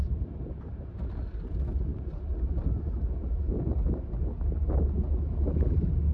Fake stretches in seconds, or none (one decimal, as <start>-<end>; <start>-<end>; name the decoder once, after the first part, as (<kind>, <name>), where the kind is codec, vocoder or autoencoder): none